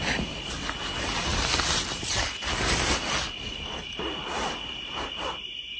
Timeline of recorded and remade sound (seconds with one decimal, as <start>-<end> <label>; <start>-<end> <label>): 0.0-5.8 recorded